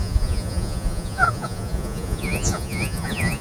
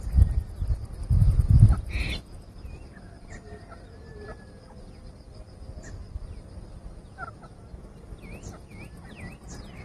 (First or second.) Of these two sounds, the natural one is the second